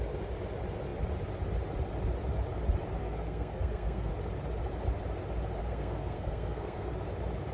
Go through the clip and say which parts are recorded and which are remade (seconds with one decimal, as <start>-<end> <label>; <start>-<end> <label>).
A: 0.0-3.0 recorded; 3.0-4.1 remade; 4.1-5.6 recorded; 5.6-6.9 remade; 6.9-7.5 recorded